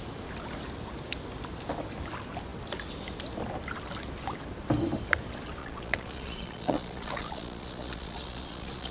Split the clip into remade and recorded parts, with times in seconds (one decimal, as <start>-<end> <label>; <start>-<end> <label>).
0.0-5.6 recorded; 5.6-8.9 remade